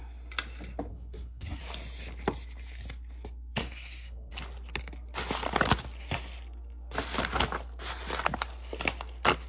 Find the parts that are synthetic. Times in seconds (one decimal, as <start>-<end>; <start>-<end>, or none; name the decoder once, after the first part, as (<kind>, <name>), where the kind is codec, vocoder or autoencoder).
0.9-1.6 (codec, SNAC); 3.6-4.3